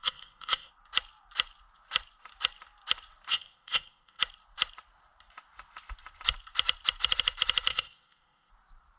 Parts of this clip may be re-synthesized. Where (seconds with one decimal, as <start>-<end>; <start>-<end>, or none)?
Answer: 0.0-0.7; 3.3-4.2; 7.7-8.5